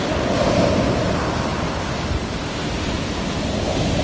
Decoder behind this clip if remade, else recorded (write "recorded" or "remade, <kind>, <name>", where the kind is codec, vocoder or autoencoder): recorded